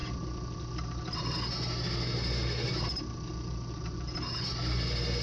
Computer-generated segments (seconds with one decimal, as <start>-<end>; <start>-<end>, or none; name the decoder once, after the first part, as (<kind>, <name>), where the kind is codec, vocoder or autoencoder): none

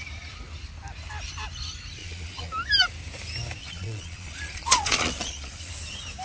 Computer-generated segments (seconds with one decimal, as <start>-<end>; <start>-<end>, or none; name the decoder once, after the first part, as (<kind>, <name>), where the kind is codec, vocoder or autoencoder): 2.0-2.5 (vocoder, Vocos); 3.6-5.7

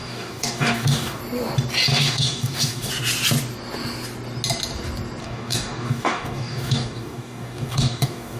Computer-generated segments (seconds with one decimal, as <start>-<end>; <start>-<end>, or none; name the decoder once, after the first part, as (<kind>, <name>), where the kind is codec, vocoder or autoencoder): 0.0-1.2 (codec, DAC); 1.9-2.9; 5.2-8.4

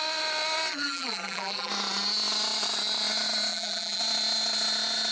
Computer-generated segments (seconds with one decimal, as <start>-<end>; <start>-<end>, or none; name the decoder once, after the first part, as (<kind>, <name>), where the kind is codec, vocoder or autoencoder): 0.7-1.7 (vocoder, BigVGAN v2); 3.5-4.0

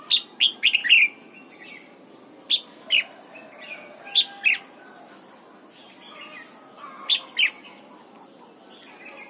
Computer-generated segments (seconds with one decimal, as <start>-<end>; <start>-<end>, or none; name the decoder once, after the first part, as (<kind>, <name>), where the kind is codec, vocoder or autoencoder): none

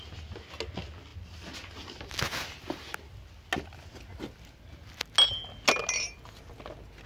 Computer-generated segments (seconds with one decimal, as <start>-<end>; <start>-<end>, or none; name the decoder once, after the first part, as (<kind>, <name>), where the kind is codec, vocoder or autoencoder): none

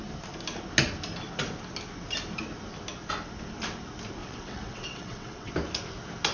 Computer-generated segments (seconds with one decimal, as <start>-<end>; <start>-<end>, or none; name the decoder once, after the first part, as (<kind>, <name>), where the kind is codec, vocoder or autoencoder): 4.2-5.5 (vocoder, WaveNeXt)

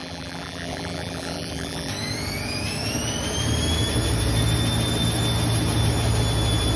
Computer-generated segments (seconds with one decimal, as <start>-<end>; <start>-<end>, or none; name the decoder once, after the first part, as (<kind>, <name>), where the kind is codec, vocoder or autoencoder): 0.0-1.9 (vocoder, BigVGAN v2)